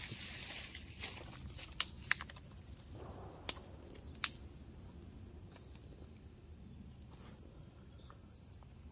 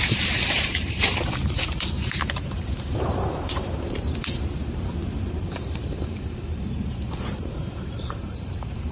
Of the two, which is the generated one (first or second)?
second